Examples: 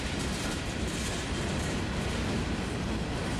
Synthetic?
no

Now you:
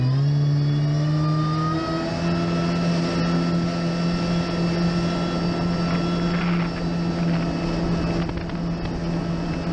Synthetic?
no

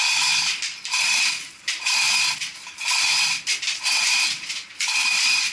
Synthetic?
no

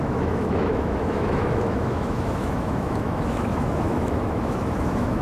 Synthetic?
yes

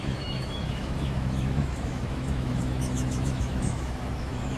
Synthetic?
yes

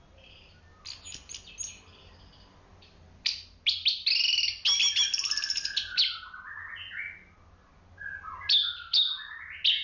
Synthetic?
no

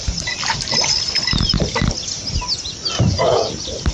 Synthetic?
no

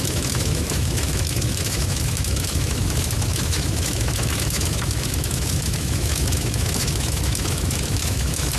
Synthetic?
yes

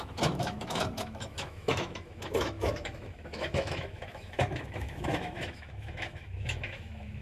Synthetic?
yes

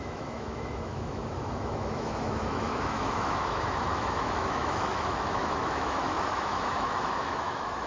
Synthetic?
yes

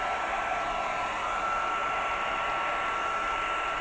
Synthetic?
no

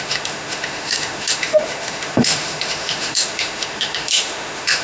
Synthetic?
yes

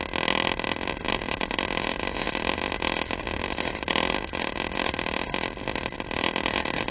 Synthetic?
no